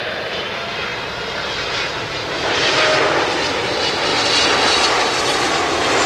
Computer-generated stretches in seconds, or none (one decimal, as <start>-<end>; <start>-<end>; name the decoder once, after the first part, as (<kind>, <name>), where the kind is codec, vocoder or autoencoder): none